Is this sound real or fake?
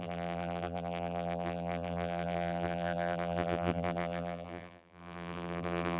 fake